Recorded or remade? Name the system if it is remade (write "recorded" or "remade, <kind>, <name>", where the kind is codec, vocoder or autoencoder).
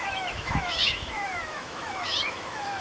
remade, autoencoder, DAC-VAE